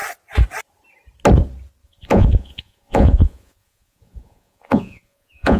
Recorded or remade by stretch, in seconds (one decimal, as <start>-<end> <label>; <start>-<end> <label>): 0.0-1.8 recorded; 1.8-5.6 remade